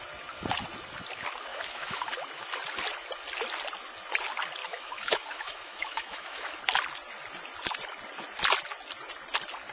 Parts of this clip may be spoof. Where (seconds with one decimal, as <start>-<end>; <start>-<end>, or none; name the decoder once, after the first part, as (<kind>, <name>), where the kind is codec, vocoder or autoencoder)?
1.5-2.1 (autoencoder, DAC-VAE); 4.6-6.6